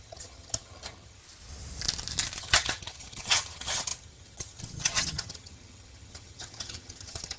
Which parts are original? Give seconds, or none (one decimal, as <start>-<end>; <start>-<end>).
1.2-2.4